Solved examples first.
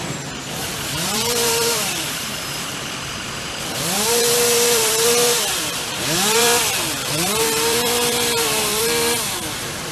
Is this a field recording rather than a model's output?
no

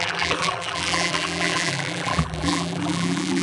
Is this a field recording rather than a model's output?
no